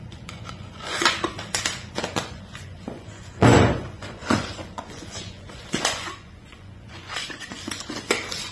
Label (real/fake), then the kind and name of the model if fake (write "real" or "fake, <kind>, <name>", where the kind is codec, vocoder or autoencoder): fake, vocoder, Vocos